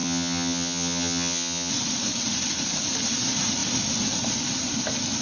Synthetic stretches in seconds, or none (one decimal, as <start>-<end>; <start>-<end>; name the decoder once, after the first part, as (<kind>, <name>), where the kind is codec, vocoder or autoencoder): 0.0-1.7 (vocoder, HiFi-GAN)